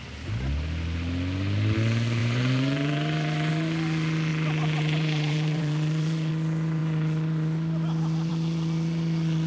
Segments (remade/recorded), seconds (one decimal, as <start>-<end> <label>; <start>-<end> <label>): 0.0-2.2 recorded; 2.2-3.5 remade; 3.5-4.3 recorded; 4.3-6.3 remade; 6.3-9.5 recorded